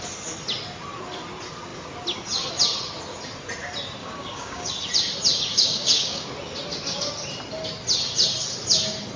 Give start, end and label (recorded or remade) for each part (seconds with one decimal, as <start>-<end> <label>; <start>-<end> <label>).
0.0-4.0 recorded; 4.0-4.7 remade; 4.7-5.5 recorded; 5.5-6.3 remade; 6.3-9.2 recorded

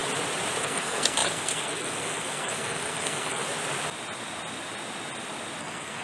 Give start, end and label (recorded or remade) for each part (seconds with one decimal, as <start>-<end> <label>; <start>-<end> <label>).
0.0-0.6 recorded; 0.6-3.4 remade; 3.4-5.6 recorded; 5.6-6.0 remade

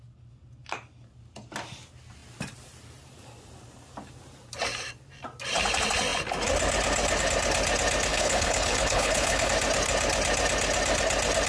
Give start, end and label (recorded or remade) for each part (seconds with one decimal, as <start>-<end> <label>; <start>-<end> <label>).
0.0-8.1 recorded; 8.1-9.5 remade; 9.5-11.5 recorded

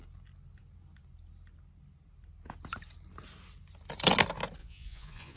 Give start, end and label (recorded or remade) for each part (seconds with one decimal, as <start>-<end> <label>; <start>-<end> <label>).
0.0-4.6 recorded; 4.6-5.4 remade